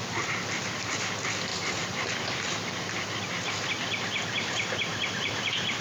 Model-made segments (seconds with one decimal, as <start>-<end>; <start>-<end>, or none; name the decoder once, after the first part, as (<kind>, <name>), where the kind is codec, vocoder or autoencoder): 1.5-2.7 (vocoder, BigVGAN v2); 4.9-5.8